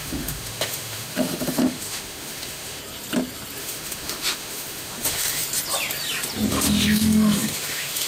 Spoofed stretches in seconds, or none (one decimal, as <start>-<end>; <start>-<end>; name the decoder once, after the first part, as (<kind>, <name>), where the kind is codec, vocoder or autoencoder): 0.0-2.8 (autoencoder, DAC-VAE); 3.6-5.4; 6.5-8.1